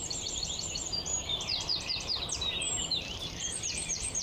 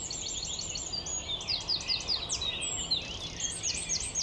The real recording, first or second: second